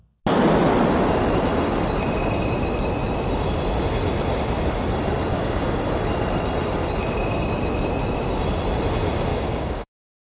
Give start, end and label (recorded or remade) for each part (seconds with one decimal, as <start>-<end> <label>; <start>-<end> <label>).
0.0-5.2 recorded; 5.2-5.8 remade; 5.8-9.3 recorded; 9.3-10.2 remade